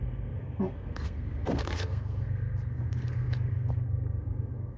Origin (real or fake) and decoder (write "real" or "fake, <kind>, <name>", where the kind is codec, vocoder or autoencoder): fake, codec, SNAC